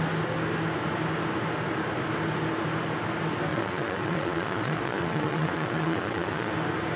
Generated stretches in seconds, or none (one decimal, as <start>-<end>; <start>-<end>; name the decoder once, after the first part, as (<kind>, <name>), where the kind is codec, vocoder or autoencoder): 3.5-6.5 (vocoder, Vocos)

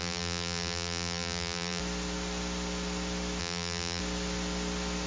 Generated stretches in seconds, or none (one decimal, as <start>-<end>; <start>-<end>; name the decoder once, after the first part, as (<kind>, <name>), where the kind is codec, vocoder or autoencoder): 0.0-1.8 (vocoder, BigVGAN v2); 3.4-4.0

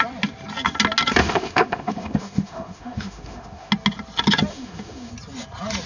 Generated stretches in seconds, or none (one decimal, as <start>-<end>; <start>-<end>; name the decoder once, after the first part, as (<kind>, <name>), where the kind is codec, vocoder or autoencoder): 1.2-3.7 (autoencoder, DAC-VAE); 4.5-5.1

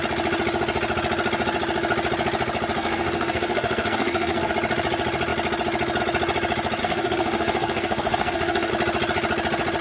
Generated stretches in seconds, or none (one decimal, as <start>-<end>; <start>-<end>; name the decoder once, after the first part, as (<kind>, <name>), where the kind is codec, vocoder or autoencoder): 2.8-4.5 (codec, SNAC); 6.8-8.7

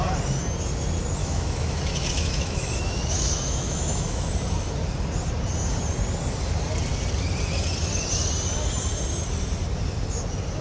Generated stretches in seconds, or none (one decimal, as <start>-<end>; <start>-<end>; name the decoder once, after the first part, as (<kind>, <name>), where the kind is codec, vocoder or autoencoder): 1.2-4.3 (autoencoder, DAC-VAE)

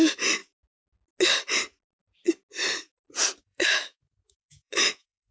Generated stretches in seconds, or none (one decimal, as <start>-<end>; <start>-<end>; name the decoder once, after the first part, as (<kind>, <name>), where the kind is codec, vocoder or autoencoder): 0.0-0.4 (autoencoder, DAC-VAE); 3.4-5.3

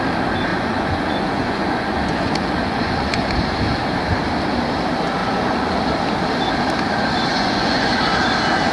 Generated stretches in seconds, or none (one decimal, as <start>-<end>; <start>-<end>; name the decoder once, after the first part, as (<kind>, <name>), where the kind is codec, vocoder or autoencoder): 0.5-3.3 (vocoder, Vocos); 5.2-5.8; 7.3-8.0

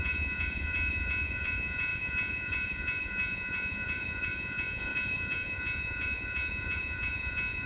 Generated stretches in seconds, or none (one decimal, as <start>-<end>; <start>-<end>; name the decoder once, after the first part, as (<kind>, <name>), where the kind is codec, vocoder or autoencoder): 0.0-7.7 (vocoder, Vocos)